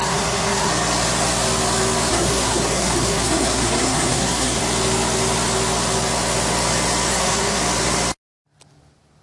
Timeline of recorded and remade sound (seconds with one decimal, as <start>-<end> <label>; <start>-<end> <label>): 0.0-0.7 remade; 0.7-2.1 recorded; 2.1-4.6 remade; 4.6-7.1 recorded; 7.1-7.6 remade; 7.6-9.2 recorded